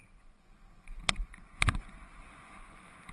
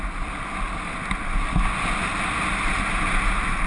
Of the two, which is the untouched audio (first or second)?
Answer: second